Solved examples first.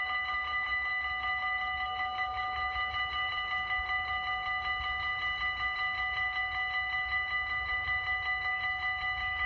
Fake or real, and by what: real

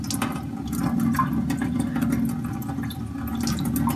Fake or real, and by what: real